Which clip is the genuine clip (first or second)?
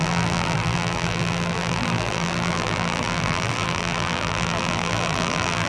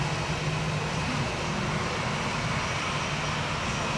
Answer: second